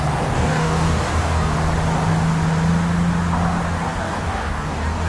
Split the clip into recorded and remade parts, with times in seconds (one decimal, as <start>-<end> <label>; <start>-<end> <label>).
0.0-1.5 remade; 1.5-4.0 recorded; 4.0-5.1 remade